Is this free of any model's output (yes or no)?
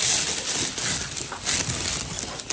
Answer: yes